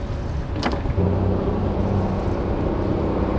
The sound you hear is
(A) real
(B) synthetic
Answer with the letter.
A